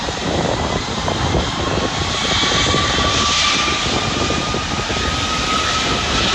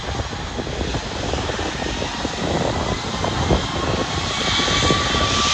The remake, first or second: first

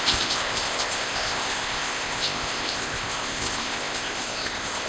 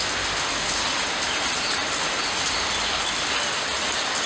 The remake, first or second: first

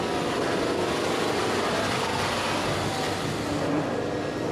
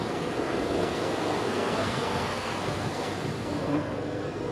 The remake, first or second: second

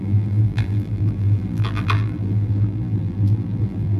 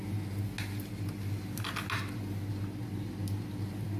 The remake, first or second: first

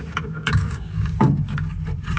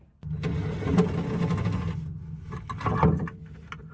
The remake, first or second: first